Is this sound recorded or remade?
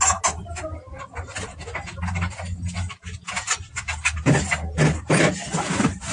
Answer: recorded